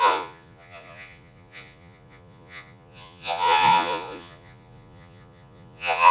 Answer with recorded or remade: remade